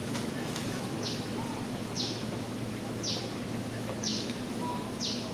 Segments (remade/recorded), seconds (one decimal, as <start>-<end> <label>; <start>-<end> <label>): 0.0-5.3 remade